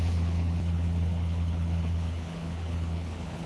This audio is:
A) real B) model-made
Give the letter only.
B